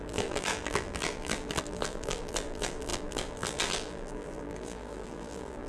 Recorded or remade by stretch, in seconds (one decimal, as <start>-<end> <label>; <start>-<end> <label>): 0.0-5.7 remade